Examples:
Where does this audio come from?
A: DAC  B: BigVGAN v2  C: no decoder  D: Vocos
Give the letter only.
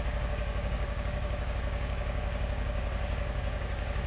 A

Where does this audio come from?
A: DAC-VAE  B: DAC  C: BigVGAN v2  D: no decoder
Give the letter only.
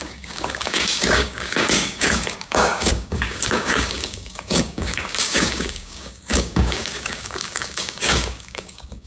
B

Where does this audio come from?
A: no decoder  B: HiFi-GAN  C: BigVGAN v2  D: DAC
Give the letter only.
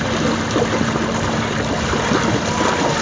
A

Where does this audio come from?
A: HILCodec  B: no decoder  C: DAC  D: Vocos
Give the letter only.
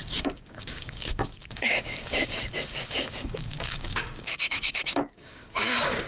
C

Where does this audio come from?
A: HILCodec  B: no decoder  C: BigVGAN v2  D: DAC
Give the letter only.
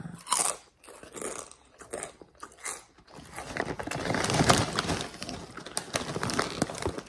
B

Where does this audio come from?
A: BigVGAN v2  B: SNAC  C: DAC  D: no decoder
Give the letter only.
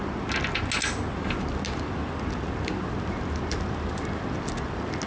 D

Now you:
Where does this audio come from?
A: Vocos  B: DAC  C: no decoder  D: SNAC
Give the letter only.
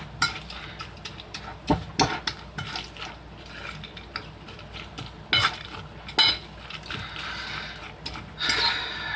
C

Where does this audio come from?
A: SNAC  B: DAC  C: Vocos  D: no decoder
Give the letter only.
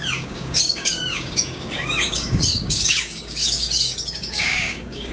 B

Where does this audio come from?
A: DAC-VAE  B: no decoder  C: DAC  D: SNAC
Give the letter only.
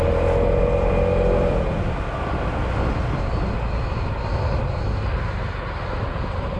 B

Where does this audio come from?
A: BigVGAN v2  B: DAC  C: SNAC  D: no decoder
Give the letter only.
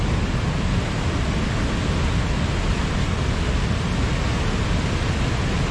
D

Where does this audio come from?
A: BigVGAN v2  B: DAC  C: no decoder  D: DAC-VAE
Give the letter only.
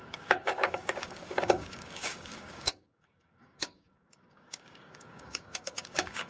B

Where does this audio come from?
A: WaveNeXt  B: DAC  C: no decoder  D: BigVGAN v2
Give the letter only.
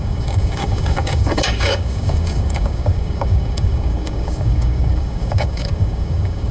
B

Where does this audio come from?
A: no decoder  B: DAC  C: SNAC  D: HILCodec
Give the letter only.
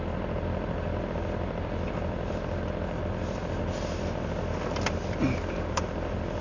A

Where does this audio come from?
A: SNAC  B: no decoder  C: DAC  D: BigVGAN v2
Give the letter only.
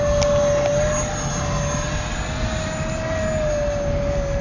B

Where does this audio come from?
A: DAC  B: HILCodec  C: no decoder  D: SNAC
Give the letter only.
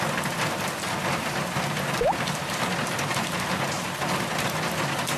C